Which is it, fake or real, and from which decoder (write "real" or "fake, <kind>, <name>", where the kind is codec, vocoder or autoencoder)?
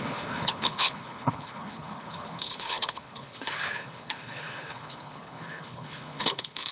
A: fake, codec, HILCodec